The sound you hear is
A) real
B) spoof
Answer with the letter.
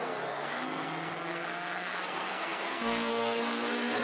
B